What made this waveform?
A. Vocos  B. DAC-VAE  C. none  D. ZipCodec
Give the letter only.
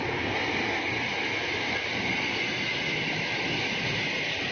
C